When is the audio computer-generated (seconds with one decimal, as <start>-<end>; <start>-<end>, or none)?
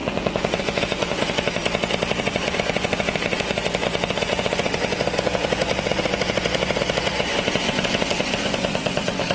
0.0-1.6; 2.2-9.3